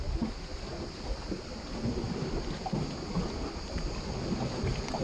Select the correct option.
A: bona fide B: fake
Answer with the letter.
A